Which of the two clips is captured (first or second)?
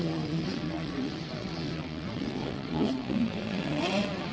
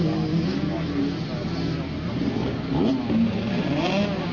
second